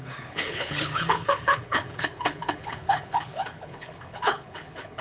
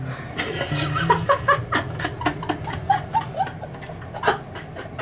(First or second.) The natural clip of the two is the second